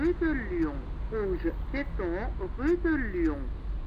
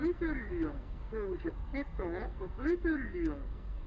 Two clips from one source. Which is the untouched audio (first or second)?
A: first